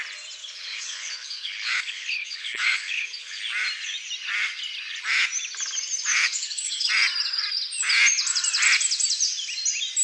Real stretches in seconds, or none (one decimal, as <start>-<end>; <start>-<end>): 0.0-0.4; 3.4-6.1; 6.9-10.0